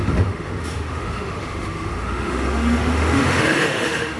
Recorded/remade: remade